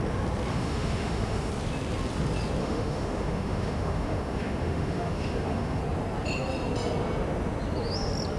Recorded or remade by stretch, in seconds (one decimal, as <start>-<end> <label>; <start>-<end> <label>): 0.0-0.5 recorded; 0.5-1.5 remade; 1.5-2.6 recorded; 2.6-5.8 remade; 5.8-8.4 recorded